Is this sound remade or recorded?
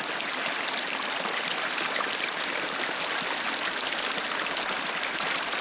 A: recorded